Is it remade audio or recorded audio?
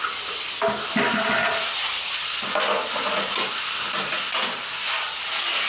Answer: recorded